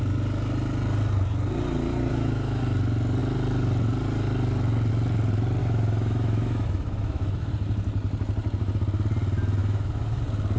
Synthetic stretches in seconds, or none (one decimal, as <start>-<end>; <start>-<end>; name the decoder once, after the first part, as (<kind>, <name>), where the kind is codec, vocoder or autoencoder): 2.1-2.6 (autoencoder, DAC-VAE); 5.6-7.5; 9.6-10.2

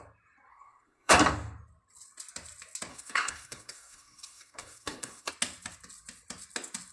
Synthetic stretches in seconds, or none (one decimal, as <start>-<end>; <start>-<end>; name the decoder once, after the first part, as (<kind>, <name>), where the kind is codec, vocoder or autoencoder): 0.5-1.2 (codec, SNAC); 2.9-5.3

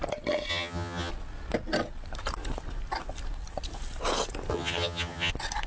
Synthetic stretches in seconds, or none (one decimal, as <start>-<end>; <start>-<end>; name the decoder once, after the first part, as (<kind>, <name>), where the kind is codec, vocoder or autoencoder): 0.5-1.1 (vocoder, HiFi-GAN); 4.5-5.3

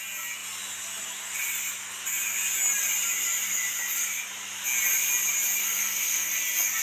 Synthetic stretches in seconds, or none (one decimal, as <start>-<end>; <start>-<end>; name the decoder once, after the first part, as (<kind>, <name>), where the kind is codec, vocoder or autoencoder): 5.6-6.3 (codec, SNAC)

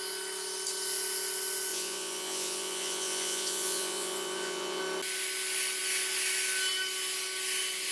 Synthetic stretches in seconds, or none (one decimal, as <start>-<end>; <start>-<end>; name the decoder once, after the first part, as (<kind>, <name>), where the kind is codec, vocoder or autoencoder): 1.7-4.8 (vocoder, Vocos)

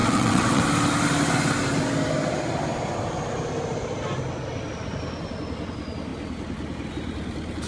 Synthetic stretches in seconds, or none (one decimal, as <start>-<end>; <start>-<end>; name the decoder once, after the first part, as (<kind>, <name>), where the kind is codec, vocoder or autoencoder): 0.0-0.6 (vocoder, WaveNeXt)

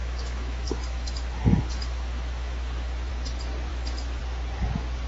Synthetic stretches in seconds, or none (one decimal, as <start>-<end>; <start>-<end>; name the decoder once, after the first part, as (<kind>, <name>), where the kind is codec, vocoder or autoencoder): 0.0-3.1 (autoencoder, DAC-VAE); 3.7-4.2

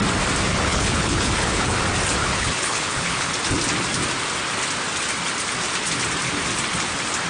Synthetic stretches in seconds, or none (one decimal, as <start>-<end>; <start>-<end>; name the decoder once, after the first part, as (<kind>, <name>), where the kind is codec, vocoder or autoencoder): 0.5-1.8 (codec, HILCodec); 2.2-3.3